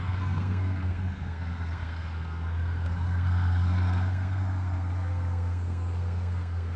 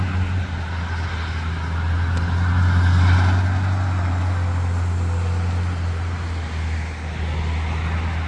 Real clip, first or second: second